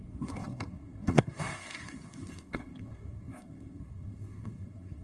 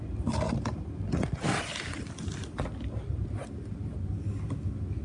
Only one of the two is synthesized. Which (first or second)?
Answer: first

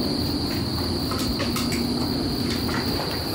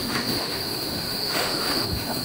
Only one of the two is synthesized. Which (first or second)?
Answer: second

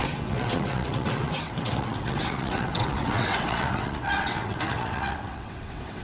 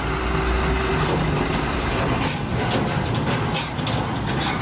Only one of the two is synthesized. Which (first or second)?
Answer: first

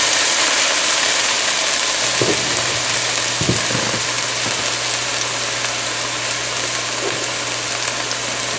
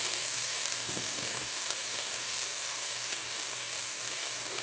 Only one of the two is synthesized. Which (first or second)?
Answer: second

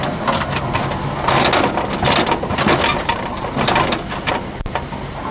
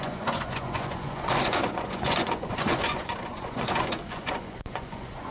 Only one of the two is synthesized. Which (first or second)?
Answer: second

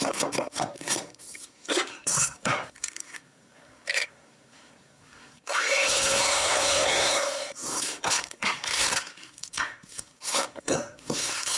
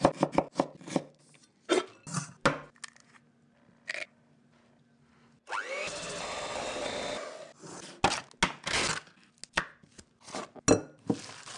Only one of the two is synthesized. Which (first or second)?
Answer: first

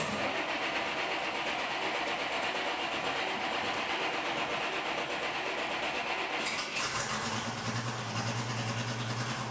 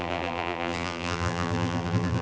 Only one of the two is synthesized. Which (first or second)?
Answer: second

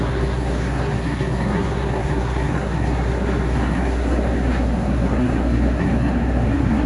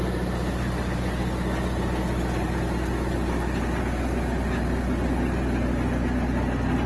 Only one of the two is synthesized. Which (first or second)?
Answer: first